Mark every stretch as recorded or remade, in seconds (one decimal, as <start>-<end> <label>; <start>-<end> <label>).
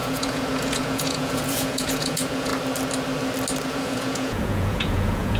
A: 0.0-2.5 remade; 2.5-3.7 recorded; 3.7-5.4 remade